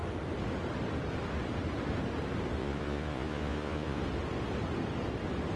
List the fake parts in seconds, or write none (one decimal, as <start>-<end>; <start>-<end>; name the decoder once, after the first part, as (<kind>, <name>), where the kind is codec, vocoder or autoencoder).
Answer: 2.6-4.0 (vocoder, Vocos)